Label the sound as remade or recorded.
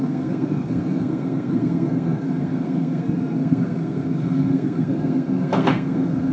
remade